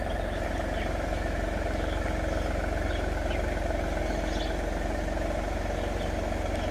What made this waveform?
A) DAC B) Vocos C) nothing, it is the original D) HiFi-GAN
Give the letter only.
C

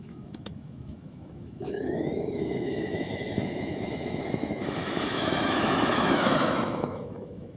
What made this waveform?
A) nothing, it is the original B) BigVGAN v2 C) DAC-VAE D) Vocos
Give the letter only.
C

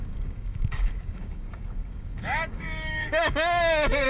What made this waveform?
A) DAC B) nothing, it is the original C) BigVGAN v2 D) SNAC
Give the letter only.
A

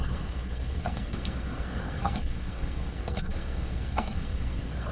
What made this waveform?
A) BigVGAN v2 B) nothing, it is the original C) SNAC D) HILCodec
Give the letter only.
C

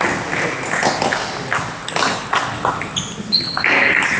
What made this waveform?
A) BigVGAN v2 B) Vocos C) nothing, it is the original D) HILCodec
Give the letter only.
C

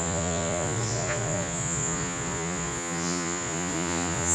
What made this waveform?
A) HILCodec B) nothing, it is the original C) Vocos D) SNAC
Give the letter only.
C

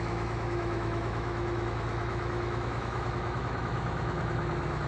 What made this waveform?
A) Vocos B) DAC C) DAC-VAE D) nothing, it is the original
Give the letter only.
C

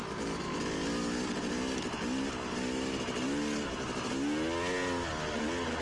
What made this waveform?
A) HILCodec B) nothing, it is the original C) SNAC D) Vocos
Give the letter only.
B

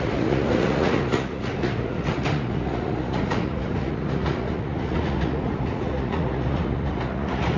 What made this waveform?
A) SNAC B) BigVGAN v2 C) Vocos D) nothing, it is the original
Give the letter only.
C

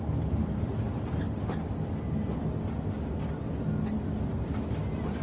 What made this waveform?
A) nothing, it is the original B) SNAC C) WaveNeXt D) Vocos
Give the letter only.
A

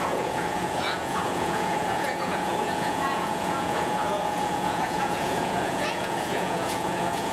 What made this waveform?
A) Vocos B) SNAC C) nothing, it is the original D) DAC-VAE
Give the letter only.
A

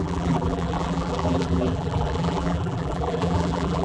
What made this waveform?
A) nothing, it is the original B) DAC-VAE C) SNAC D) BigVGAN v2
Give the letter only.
D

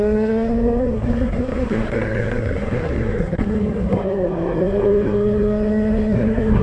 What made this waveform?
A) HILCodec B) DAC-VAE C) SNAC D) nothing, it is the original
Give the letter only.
C